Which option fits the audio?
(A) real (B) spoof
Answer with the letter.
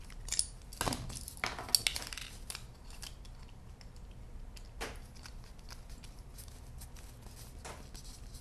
A